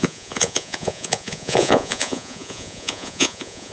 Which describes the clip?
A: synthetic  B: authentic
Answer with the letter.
A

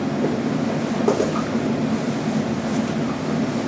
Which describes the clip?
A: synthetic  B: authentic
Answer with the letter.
B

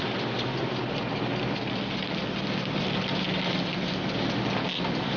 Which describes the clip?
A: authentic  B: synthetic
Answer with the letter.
A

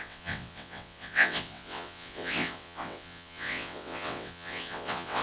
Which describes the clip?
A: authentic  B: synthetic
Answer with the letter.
B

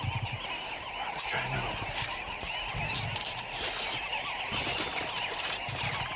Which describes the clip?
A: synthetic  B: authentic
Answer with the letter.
B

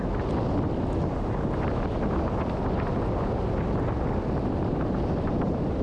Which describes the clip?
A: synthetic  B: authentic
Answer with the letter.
B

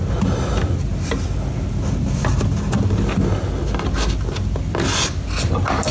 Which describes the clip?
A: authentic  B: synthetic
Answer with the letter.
A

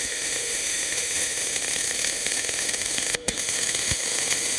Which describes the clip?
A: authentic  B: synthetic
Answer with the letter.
B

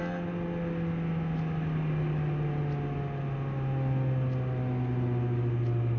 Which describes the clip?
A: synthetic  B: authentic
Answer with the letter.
B